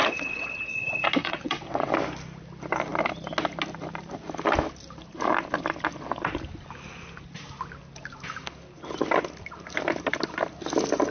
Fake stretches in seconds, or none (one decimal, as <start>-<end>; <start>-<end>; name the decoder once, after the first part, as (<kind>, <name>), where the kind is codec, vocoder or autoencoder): 0.0-0.7 (vocoder, WaveNeXt); 1.2-1.9